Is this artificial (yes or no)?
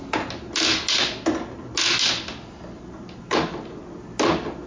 no